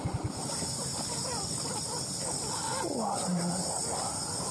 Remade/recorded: recorded